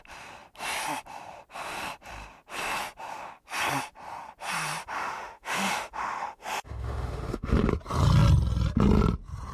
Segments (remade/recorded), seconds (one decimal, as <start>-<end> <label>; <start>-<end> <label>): 0.0-4.8 recorded; 4.8-7.7 remade; 7.7-9.5 recorded